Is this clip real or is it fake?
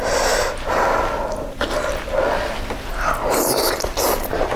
real